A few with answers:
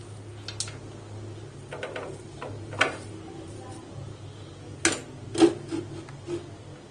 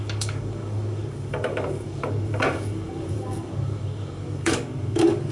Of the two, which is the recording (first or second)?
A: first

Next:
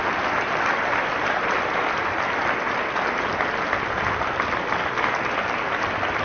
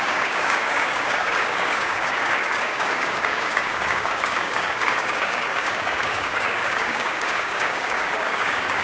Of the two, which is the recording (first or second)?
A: first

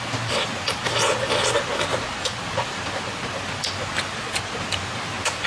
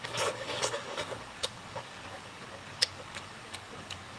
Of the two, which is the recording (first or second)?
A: first